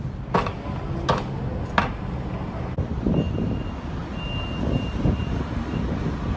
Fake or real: real